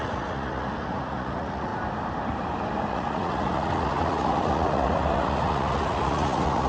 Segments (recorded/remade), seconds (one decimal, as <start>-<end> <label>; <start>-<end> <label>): 0.0-1.7 remade; 1.7-2.9 recorded; 2.9-6.7 remade